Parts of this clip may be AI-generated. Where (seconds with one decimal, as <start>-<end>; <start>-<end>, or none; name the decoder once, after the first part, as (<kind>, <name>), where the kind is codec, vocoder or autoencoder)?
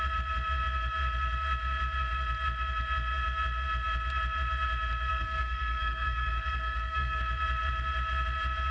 5.1-7.2 (codec, SNAC)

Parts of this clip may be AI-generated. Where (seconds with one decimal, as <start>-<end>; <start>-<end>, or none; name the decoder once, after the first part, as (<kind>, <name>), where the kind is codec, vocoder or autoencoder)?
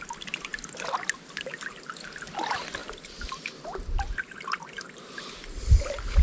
2.8-5.1 (vocoder, BigVGAN v2)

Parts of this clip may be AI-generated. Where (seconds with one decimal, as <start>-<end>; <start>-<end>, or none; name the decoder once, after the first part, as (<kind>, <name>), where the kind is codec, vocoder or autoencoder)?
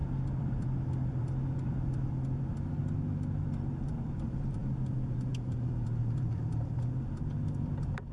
0.0-2.8 (vocoder, BigVGAN v2); 3.4-8.1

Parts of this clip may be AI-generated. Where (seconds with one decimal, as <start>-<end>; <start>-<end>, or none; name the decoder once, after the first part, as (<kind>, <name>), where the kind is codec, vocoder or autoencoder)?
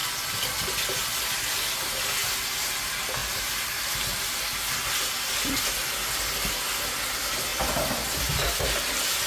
2.2-2.8 (vocoder, BigVGAN v2); 3.2-4.4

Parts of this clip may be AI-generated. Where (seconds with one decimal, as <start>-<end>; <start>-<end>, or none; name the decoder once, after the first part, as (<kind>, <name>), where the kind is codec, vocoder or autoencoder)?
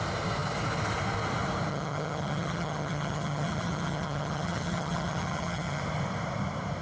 1.7-5.8 (vocoder, HiFi-GAN)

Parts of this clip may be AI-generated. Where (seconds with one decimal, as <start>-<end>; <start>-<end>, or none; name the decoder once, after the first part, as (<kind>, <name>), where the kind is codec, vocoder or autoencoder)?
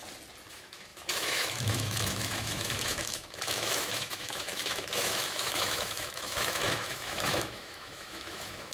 0.5-8.7 (autoencoder, DAC-VAE)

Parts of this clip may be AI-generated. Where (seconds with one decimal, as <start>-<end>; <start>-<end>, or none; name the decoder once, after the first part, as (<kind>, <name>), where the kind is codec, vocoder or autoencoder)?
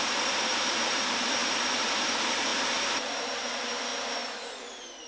0.0-3.9 (vocoder, BigVGAN v2); 4.5-5.1